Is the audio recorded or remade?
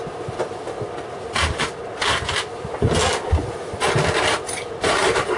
recorded